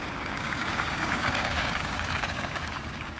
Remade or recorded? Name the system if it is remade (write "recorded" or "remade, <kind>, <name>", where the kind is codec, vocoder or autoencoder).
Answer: remade, codec, DAC